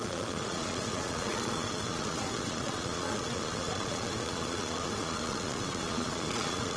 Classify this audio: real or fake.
fake